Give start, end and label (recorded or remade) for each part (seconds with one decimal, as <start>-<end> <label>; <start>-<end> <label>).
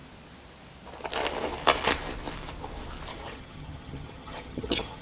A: 0.0-3.1 recorded; 3.1-5.0 remade